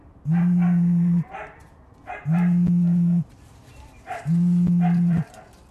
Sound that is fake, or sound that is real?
fake